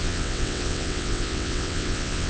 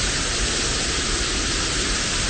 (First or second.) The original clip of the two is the second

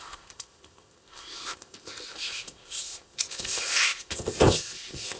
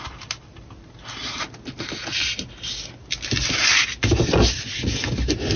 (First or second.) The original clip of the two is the second